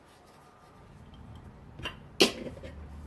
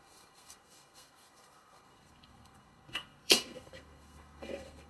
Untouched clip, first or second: first